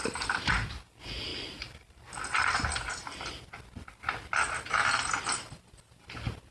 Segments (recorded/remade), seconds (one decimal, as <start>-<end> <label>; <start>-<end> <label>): 0.0-6.5 recorded